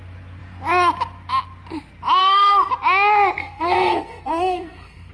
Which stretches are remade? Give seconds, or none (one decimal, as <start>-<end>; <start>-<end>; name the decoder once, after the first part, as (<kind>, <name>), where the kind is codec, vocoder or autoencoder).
2.2-2.7 (codec, SNAC); 3.4-5.1